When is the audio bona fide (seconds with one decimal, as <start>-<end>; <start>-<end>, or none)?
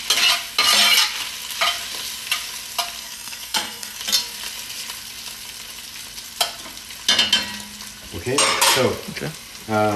0.0-3.0; 4.0-10.0